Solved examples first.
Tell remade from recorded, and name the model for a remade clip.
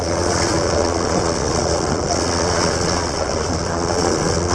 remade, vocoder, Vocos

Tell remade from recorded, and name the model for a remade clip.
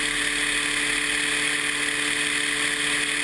recorded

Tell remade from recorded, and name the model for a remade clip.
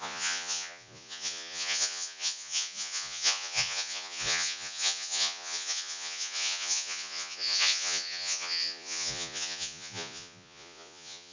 remade, vocoder, Vocos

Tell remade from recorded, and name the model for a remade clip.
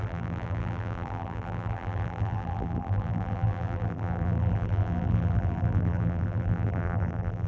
remade, vocoder, BigVGAN v2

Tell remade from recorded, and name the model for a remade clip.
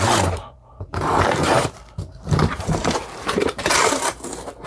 remade, vocoder, BigVGAN v2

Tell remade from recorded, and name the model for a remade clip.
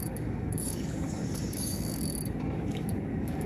remade, codec, DAC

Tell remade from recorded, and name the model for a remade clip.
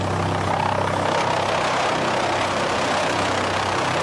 recorded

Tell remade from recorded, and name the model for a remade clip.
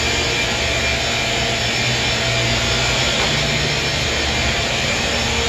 recorded